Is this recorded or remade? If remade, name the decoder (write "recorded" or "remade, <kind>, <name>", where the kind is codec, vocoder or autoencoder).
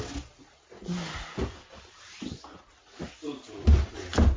recorded